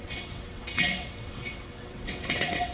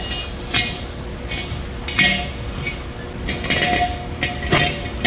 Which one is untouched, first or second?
second